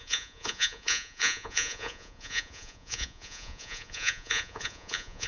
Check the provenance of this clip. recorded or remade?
remade